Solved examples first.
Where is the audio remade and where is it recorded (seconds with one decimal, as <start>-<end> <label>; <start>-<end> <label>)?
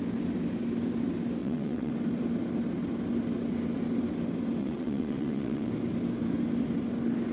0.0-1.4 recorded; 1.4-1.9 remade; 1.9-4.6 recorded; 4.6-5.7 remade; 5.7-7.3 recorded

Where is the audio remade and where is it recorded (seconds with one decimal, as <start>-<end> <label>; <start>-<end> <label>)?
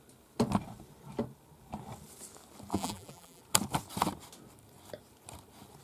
0.0-2.7 recorded; 2.7-3.4 remade; 3.4-5.8 recorded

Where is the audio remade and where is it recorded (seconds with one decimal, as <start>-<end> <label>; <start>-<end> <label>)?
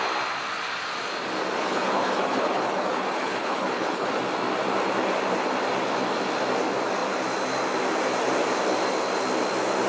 0.0-1.6 recorded; 1.6-4.1 remade; 4.1-9.9 recorded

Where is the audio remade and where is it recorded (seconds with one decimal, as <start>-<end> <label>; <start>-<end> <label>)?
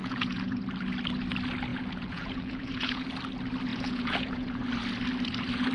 0.0-0.6 remade; 0.6-1.7 recorded; 1.7-3.1 remade; 3.1-3.7 recorded; 3.7-4.6 remade; 4.6-5.7 recorded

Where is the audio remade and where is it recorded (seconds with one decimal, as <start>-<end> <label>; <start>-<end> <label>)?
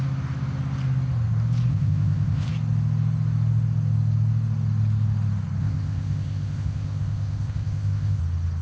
0.0-1.7 recorded; 1.7-2.5 remade; 2.5-5.6 recorded; 5.6-8.2 remade; 8.2-8.6 recorded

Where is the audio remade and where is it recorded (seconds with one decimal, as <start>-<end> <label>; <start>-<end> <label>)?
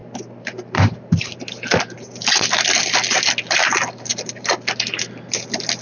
0.0-5.8 recorded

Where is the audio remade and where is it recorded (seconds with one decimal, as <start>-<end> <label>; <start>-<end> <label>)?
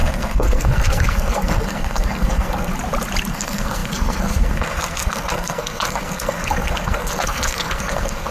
0.0-2.7 remade; 2.7-3.3 recorded; 3.3-8.3 remade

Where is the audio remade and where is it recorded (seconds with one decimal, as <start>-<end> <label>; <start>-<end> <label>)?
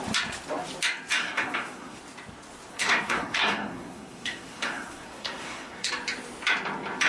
0.0-1.2 recorded; 1.2-2.0 remade; 2.0-2.7 recorded; 2.7-5.9 remade; 5.9-7.1 recorded